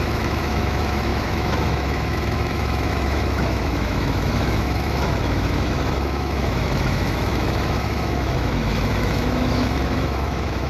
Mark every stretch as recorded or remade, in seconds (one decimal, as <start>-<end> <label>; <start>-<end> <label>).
0.0-10.7 remade